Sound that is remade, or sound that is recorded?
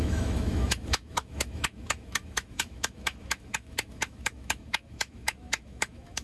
remade